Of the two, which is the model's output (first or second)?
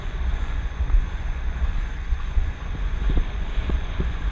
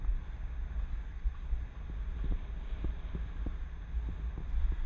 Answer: first